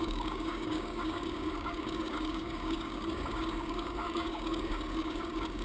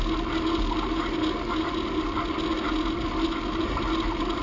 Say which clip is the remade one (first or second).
first